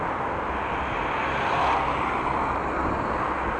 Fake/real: real